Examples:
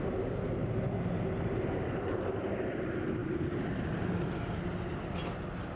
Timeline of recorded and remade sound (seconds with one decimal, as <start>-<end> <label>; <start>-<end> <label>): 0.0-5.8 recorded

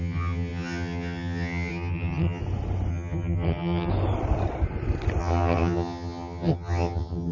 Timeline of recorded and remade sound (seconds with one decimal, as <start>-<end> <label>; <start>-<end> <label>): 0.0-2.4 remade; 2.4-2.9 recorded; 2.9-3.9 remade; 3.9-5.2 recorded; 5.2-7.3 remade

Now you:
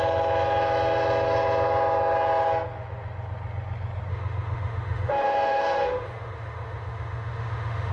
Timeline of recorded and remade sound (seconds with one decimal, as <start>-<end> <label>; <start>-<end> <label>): 0.0-4.1 recorded; 4.1-7.9 remade

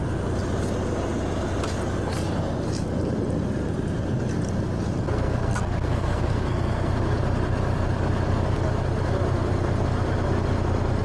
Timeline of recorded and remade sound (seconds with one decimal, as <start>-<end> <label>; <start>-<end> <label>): 0.0-5.1 recorded; 5.1-6.9 remade; 6.9-11.0 recorded

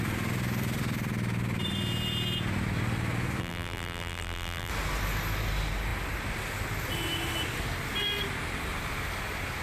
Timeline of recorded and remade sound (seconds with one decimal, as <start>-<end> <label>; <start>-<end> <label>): 0.0-3.4 recorded; 3.4-4.7 remade; 4.7-9.6 recorded